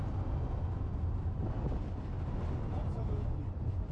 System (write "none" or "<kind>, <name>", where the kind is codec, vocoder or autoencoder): none